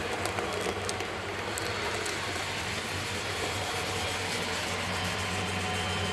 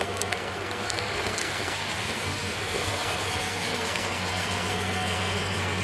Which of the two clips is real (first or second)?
first